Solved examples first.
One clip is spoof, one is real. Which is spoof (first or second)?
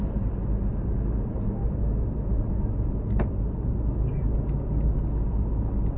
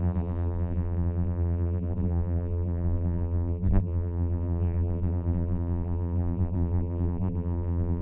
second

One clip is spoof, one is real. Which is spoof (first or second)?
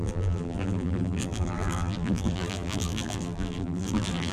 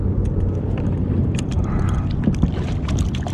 first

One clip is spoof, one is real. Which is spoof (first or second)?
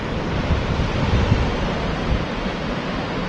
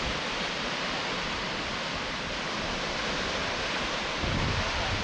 second